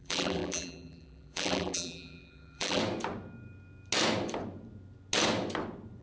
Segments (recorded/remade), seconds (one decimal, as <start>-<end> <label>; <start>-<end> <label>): 0.0-2.8 remade; 2.8-6.0 recorded